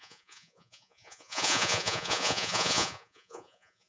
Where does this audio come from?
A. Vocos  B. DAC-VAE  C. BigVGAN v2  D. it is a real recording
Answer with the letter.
A